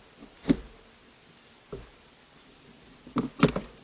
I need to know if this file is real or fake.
real